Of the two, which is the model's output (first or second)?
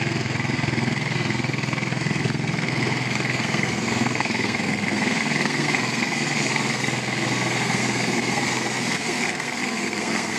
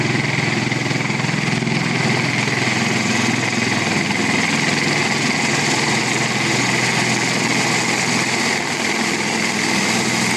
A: first